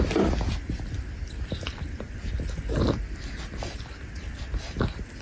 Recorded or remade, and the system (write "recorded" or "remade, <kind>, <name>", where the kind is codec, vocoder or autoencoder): recorded